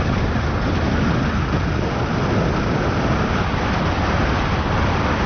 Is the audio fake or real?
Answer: real